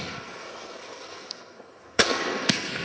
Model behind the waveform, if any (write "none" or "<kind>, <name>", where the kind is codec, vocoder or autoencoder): codec, SNAC